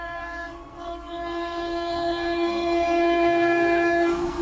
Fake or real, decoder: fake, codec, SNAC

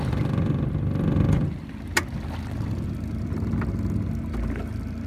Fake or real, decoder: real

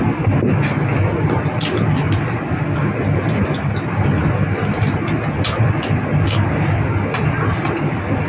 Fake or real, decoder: real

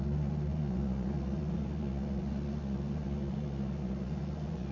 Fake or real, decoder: fake, vocoder, Vocos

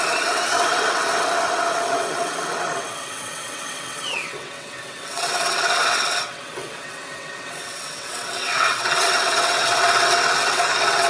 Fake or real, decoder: fake, vocoder, WaveNeXt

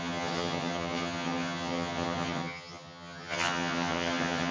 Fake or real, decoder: fake, vocoder, HiFi-GAN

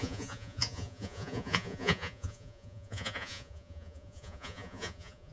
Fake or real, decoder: fake, vocoder, Vocos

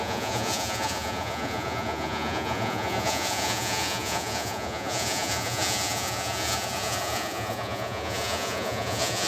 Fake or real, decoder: fake, vocoder, Vocos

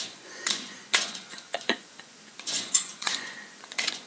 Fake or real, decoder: fake, vocoder, Vocos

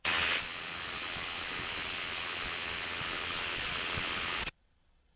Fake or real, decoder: fake, vocoder, Vocos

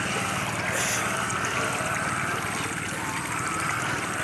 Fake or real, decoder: real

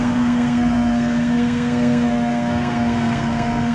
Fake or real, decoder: fake, codec, SNAC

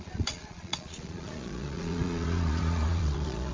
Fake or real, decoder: fake, vocoder, Vocos